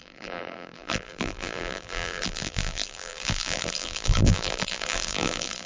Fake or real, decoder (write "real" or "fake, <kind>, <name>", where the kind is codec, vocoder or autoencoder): fake, vocoder, BigVGAN v2